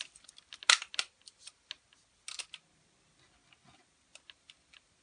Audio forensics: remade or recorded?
recorded